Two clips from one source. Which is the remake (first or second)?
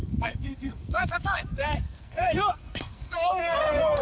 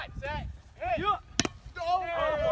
first